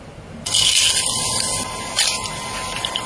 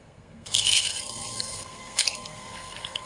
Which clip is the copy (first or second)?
second